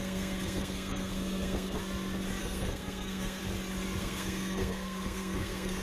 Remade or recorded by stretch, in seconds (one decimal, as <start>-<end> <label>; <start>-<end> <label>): 0.0-1.8 remade; 1.8-2.4 recorded; 2.4-3.4 remade; 3.4-4.0 recorded; 4.0-5.8 remade

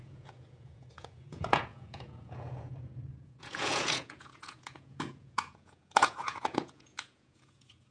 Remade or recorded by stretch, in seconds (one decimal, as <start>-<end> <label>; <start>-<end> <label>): 0.0-7.9 remade

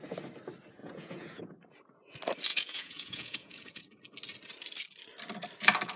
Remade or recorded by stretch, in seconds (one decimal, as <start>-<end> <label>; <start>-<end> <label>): 0.0-0.8 recorded; 0.8-1.4 remade; 1.4-2.5 recorded; 2.5-3.8 remade; 3.8-6.0 recorded